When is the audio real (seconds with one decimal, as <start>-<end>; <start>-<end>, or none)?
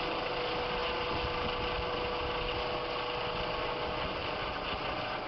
0.0-5.3